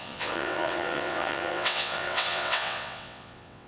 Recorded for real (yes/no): no